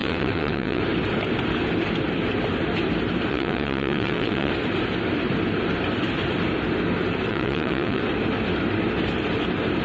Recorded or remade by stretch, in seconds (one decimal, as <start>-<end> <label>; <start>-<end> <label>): 0.0-0.8 remade; 0.8-3.3 recorded; 3.3-4.5 remade; 4.5-7.3 recorded; 7.3-8.0 remade; 8.0-9.8 recorded